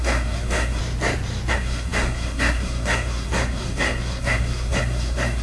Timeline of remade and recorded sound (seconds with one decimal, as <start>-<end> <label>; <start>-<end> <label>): 0.0-0.8 remade; 0.8-1.5 recorded; 1.5-5.4 remade

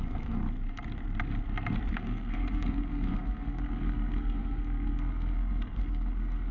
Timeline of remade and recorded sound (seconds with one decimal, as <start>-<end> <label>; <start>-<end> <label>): 0.0-0.4 remade; 0.4-1.9 recorded; 1.9-6.5 remade